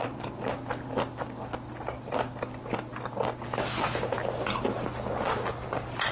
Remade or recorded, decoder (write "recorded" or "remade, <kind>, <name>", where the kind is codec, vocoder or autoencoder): recorded